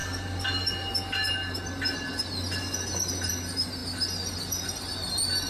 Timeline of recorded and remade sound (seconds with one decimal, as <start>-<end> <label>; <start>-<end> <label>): 0.0-5.5 recorded